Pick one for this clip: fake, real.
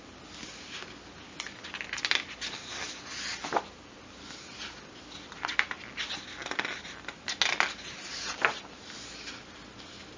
real